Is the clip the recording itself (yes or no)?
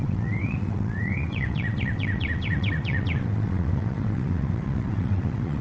no